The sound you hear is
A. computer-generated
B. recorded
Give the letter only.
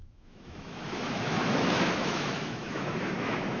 A